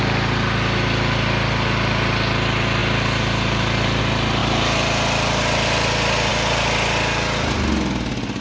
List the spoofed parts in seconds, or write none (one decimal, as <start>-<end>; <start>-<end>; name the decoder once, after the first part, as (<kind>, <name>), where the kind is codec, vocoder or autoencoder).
none